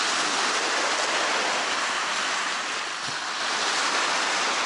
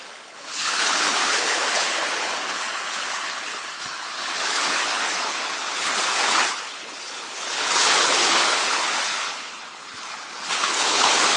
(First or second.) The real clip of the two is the first